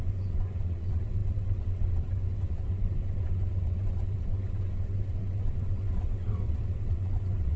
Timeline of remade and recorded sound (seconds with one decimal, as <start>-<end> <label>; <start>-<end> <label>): 0.0-7.6 remade